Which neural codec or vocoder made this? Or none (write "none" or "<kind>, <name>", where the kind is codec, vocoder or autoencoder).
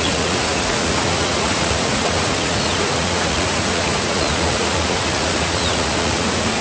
vocoder, Vocos